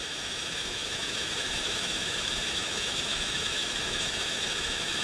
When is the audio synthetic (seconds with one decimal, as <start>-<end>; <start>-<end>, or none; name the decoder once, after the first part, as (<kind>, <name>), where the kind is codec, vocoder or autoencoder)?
0.0-5.0 (autoencoder, DAC-VAE)